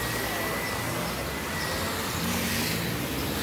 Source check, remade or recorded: recorded